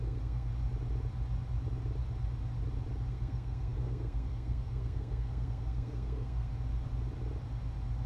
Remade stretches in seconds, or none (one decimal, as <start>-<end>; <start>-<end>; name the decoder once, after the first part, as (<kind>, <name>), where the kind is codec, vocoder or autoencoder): 0.0-0.5 (codec, SNAC); 3.1-6.5